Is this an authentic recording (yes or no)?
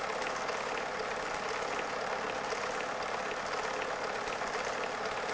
yes